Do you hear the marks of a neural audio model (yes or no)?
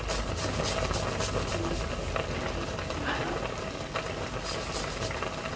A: no